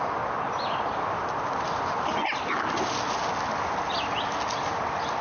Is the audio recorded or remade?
recorded